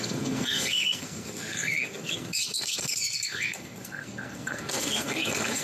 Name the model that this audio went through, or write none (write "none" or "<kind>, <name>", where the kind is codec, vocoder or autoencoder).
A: codec, SNAC